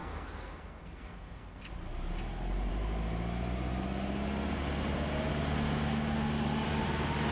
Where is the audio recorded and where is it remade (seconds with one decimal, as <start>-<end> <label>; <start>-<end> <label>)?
0.0-1.6 remade; 1.6-7.3 recorded

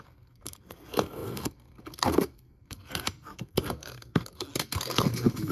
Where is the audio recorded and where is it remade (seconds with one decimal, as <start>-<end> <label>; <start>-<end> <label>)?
0.0-5.5 remade